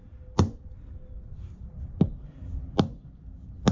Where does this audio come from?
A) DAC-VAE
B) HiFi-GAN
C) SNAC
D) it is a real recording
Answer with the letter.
D